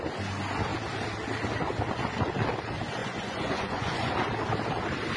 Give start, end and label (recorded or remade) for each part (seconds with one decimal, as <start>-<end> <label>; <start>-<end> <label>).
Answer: 0.0-3.0 recorded; 3.0-4.1 remade; 4.1-5.2 recorded